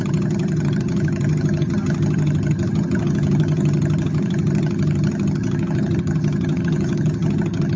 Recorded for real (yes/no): no